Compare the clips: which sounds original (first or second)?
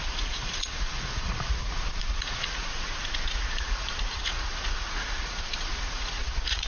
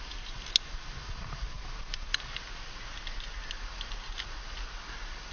second